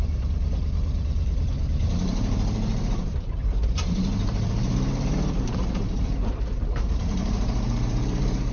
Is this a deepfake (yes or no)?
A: yes